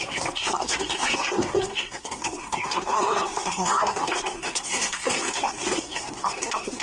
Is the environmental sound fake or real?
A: fake